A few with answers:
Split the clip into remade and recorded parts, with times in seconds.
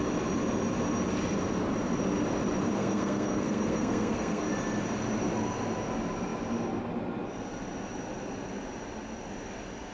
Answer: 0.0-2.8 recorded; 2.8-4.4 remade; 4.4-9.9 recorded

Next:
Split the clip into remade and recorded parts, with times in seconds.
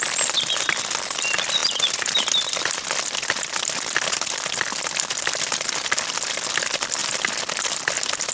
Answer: 0.0-8.3 recorded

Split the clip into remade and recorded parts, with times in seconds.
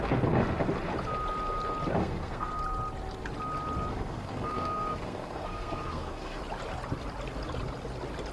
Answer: 0.0-2.0 recorded; 2.0-2.6 remade; 2.6-3.9 recorded; 3.9-6.4 remade; 6.4-8.3 recorded